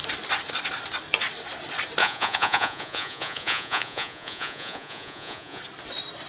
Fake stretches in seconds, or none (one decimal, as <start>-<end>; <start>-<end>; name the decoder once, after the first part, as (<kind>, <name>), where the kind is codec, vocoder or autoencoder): 2.0-5.6 (vocoder, Vocos)